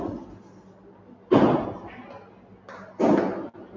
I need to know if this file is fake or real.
real